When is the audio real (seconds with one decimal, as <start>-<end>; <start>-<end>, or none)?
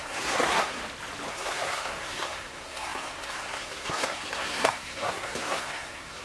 0.8-1.3